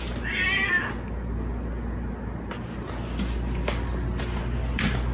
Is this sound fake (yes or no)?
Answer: no